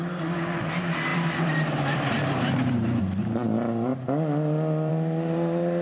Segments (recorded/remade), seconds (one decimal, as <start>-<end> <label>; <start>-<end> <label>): 0.0-1.1 recorded; 1.1-3.0 remade; 3.0-5.8 recorded